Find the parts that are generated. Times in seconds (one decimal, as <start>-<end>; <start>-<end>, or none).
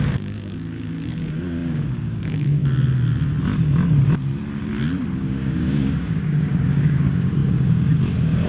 0.0-2.6; 5.2-8.5